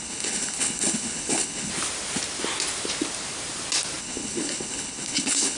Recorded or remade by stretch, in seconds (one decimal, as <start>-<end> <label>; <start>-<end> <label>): 0.0-1.7 remade; 1.7-4.0 recorded; 4.0-5.6 remade

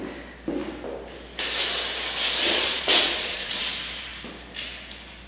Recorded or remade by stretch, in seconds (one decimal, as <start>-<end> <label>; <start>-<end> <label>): 0.0-2.4 recorded; 2.4-3.6 remade; 3.6-5.3 recorded